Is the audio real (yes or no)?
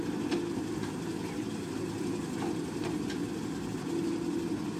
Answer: yes